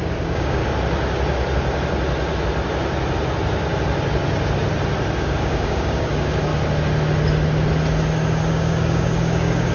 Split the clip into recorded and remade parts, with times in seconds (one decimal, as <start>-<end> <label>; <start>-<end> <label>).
0.0-0.6 remade; 0.6-5.2 recorded; 5.2-6.5 remade; 6.5-8.5 recorded; 8.5-9.7 remade